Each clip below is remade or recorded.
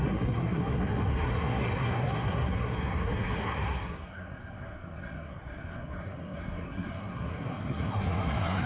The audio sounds remade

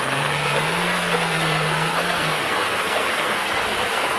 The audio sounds remade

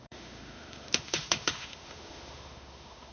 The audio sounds remade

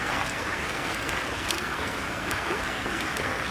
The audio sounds remade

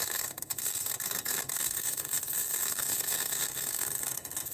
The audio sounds remade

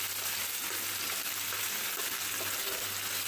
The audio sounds recorded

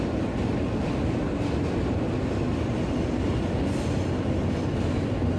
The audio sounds recorded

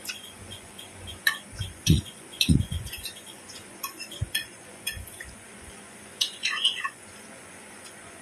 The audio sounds remade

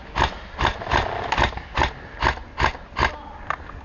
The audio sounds recorded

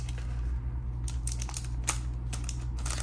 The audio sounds recorded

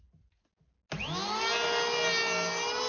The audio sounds recorded